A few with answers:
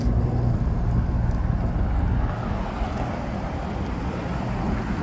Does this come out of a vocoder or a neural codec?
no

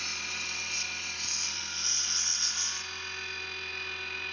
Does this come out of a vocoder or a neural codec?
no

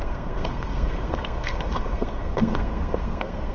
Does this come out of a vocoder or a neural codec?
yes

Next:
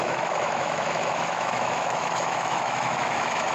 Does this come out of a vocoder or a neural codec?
yes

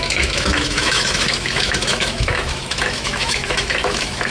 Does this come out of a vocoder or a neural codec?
yes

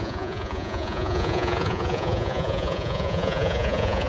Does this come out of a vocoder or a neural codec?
yes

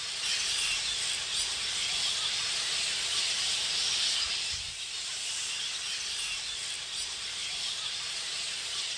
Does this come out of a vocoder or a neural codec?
no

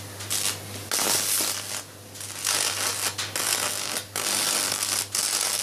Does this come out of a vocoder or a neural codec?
no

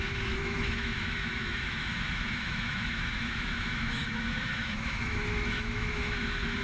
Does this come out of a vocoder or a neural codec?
yes